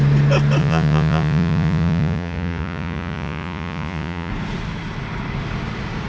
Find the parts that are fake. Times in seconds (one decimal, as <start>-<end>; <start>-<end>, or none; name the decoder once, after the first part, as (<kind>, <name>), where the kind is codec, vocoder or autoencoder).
0.6-4.3 (vocoder, Vocos)